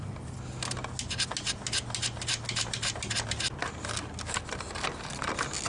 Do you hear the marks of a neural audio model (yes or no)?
no